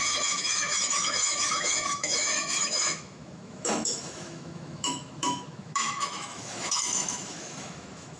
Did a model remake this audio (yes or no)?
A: yes